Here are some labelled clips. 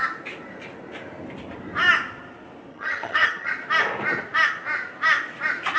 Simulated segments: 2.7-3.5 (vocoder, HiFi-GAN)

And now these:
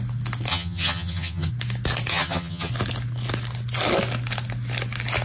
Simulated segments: 0.5-1.5 (vocoder, HiFi-GAN); 2.1-2.7

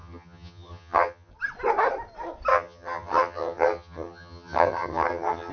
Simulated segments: 0.0-1.3 (vocoder, HiFi-GAN); 2.5-5.5

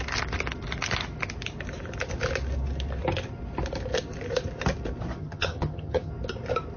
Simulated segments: 5.2-6.1 (vocoder, HiFi-GAN)

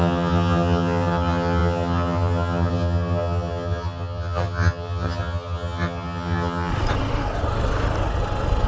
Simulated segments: 0.0-6.7 (vocoder, HiFi-GAN)